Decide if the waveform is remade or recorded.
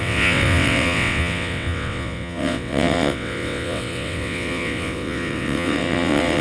remade